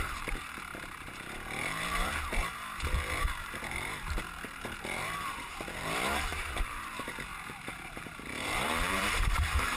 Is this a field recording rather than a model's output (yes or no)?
no